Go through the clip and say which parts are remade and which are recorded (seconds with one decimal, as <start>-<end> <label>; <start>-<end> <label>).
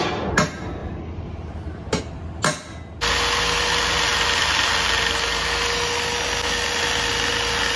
0.0-0.8 recorded; 0.8-2.0 remade; 2.0-7.8 recorded